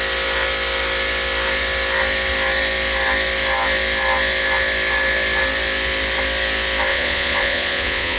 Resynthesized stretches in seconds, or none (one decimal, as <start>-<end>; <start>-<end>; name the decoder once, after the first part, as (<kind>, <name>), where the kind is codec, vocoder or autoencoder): 6.9-8.2 (vocoder, Vocos)